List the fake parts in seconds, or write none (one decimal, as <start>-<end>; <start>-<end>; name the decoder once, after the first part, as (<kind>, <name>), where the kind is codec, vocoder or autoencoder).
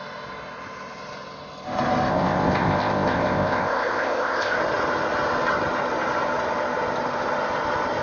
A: 2.1-4.6 (codec, ZipCodec)